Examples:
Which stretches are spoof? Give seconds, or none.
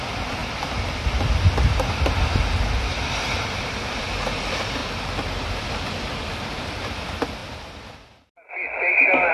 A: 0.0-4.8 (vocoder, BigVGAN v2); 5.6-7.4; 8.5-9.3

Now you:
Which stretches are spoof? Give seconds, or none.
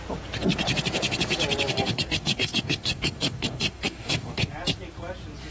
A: 1.7-4.5 (codec, DAC)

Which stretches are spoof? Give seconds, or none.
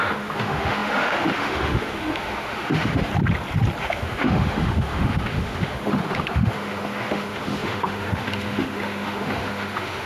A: 0.0-3.1 (autoencoder, DAC-VAE); 3.8-10.1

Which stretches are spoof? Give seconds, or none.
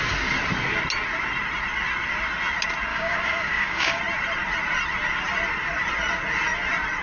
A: 2.9-4.0 (codec, DAC)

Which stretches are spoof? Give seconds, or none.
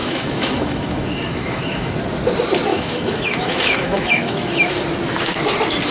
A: 0.0-1.9 (autoencoder, DAC-VAE); 2.7-4.7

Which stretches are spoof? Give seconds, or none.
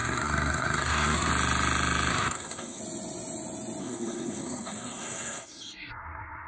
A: 0.0-1.3 (codec, SNAC); 2.1-2.8; 3.8-6.5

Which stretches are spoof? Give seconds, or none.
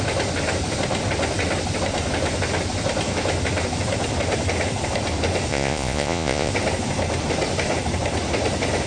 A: 5.5-6.5 (vocoder, Vocos)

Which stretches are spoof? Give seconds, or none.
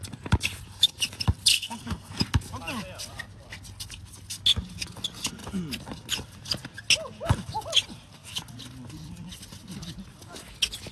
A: 1.5-2.2 (codec, SNAC)